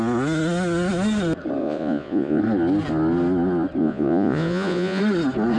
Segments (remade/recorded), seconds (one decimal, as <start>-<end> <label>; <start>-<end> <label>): 0.0-1.6 recorded; 1.6-2.4 remade; 2.4-3.8 recorded; 3.8-5.0 remade; 5.0-5.6 recorded